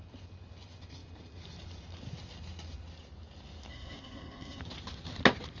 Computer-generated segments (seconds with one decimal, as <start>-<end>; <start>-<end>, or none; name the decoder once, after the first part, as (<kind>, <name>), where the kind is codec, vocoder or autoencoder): 3.7-4.6 (codec, SNAC)